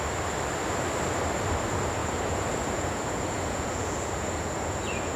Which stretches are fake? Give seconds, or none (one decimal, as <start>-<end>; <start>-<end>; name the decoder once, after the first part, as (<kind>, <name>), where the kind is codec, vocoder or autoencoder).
2.0-5.2 (vocoder, Vocos)

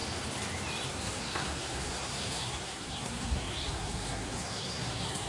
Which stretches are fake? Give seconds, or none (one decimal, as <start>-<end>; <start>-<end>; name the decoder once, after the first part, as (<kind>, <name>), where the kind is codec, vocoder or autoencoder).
0.9-5.3 (codec, SNAC)